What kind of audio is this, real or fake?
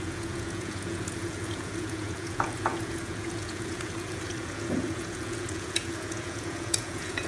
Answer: fake